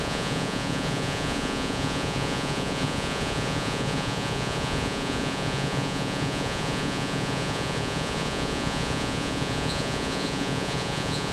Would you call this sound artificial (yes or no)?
yes